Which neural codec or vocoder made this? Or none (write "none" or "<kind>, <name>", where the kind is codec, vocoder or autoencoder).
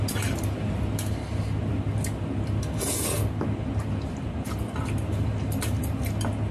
none